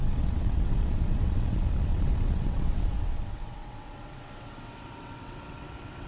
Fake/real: fake